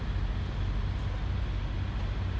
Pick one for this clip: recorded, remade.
recorded